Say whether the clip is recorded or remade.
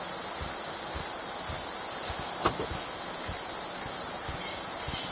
recorded